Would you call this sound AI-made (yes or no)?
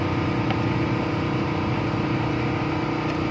no